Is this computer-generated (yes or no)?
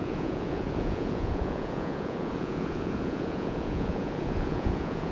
yes